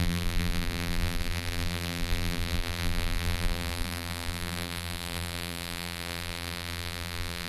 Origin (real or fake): fake